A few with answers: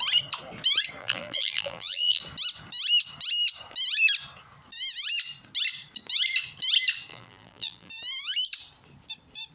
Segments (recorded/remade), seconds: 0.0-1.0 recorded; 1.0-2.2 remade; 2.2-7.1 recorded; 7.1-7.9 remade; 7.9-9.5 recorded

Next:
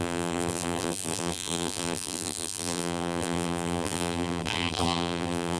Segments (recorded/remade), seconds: 0.0-5.6 remade